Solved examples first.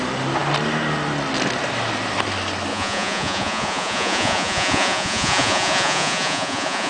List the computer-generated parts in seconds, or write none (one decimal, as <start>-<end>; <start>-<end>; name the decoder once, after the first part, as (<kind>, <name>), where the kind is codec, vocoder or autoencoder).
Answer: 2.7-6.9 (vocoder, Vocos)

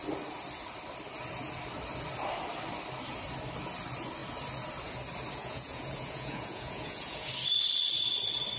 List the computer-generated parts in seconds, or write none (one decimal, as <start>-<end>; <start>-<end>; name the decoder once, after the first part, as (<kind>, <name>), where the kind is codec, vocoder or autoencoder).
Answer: 5.4-7.3 (vocoder, Vocos)

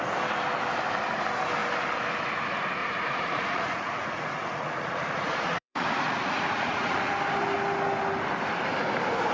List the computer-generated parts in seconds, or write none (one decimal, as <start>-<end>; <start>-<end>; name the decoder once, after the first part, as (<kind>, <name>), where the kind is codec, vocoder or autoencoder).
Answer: 2.8-7.1 (vocoder, Vocos)

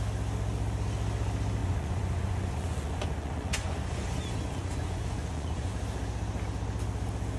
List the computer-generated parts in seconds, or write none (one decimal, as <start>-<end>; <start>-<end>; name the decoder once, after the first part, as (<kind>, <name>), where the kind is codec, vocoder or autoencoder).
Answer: 1.6-5.7 (vocoder, Vocos)

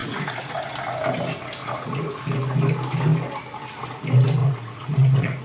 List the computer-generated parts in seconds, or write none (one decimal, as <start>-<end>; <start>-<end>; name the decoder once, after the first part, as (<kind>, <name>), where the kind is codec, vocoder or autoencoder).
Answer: 0.0-0.5 (vocoder, Vocos); 1.6-2.2; 4.4-5.4